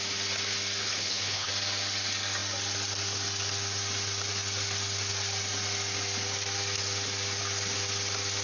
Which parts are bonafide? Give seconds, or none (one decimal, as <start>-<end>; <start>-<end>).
0.0-0.8; 1.5-8.4